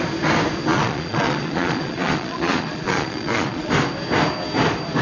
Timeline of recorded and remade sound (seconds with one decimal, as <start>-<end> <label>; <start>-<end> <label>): 0.0-0.7 recorded; 0.7-3.7 remade; 3.7-5.0 recorded